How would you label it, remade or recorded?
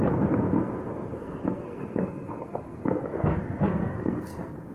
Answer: remade